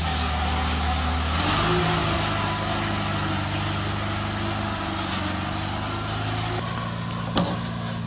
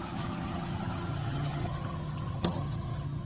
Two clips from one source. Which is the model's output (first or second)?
second